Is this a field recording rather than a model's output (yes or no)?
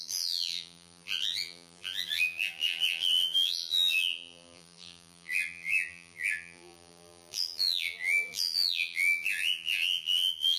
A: no